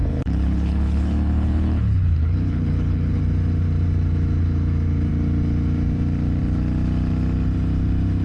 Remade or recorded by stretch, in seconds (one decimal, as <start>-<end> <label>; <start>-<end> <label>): 0.0-3.2 remade; 3.2-8.2 recorded